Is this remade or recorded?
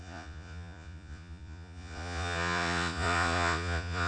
remade